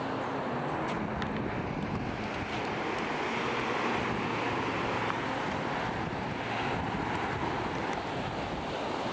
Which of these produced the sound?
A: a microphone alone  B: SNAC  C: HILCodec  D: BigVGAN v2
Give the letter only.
A